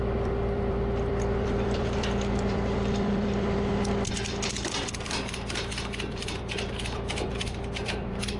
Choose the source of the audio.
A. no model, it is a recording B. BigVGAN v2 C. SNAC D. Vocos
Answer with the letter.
B